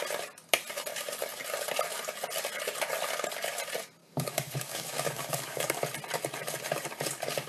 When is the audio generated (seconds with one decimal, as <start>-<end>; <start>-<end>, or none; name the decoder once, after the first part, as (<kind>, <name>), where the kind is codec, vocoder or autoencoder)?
4.0-5.8 (codec, DAC)